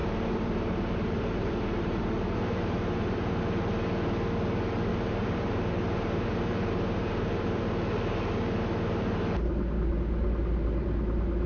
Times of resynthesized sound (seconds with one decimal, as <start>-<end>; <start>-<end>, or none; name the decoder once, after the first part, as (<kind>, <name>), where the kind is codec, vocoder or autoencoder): 0.0-3.4 (vocoder, BigVGAN v2); 4.9-7.6